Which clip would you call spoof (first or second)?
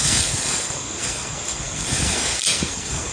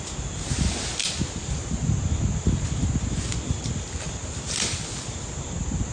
first